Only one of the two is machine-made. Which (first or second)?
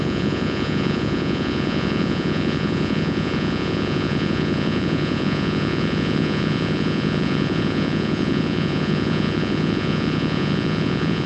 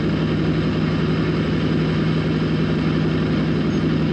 first